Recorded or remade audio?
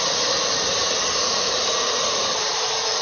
remade